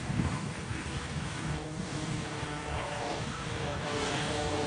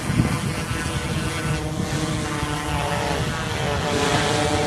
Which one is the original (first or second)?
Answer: second